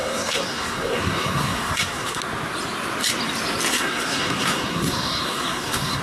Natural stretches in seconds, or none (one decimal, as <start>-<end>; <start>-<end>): 2.2-3.7